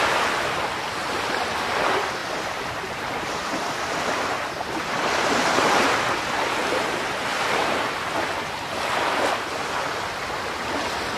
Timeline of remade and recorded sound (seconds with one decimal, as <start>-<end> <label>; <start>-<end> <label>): 0.0-2.2 recorded; 2.2-5.8 remade; 5.8-7.3 recorded; 7.3-8.7 remade; 8.7-11.2 recorded